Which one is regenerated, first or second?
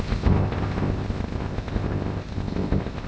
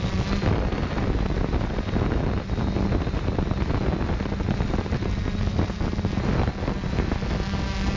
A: first